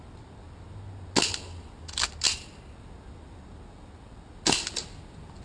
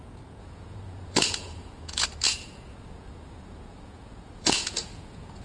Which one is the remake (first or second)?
second